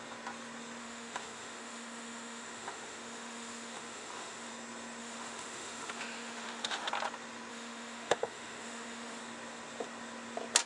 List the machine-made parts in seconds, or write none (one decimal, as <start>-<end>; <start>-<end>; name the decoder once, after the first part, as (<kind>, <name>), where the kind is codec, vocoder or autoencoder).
0.8-4.5 (autoencoder, DAC-VAE); 5.0-6.9; 7.5-9.2